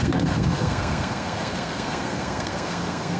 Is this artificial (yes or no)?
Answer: yes